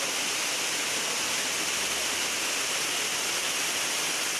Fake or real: real